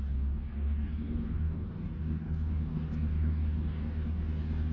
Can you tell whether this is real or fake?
fake